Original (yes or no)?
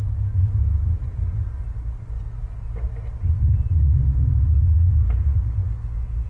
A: yes